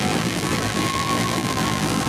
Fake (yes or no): yes